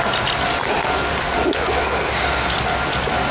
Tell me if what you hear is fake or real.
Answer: real